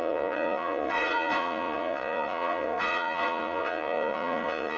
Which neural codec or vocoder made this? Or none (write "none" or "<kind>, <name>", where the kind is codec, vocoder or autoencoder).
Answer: vocoder, Vocos